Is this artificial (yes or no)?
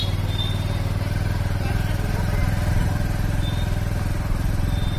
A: no